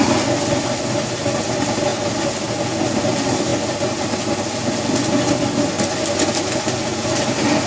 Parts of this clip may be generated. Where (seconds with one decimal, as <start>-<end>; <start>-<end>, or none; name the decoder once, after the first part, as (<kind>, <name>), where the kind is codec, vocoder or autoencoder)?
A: none